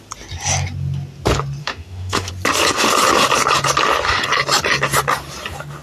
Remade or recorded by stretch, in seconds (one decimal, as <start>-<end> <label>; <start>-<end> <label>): 0.0-1.6 recorded; 1.6-2.3 remade; 2.3-5.8 recorded